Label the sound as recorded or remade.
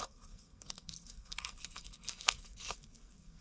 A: remade